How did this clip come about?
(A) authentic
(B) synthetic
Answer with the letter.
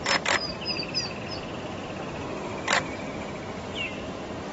A